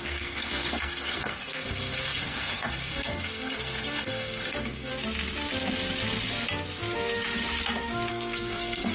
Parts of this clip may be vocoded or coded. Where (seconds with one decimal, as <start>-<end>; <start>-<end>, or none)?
0.0-4.9; 8.1-8.9

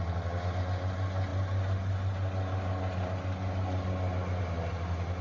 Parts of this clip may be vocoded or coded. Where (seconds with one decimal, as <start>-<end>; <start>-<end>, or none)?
none

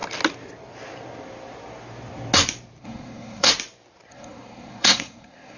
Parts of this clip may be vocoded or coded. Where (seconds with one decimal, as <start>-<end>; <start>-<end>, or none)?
2.8-3.5; 4.1-5.6

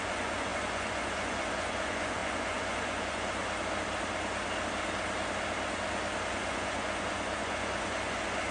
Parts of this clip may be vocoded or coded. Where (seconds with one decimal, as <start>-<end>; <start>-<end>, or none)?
0.0-3.4; 6.3-8.5

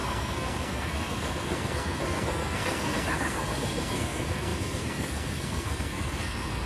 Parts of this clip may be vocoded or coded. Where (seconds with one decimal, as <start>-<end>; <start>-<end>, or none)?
0.0-6.7